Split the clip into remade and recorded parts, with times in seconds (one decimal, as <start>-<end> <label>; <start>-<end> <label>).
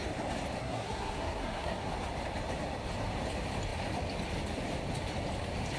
0.0-0.6 recorded; 0.6-1.9 remade; 1.9-5.8 recorded